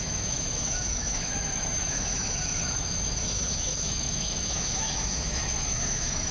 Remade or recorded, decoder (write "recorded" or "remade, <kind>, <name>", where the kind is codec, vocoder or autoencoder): remade, autoencoder, DAC-VAE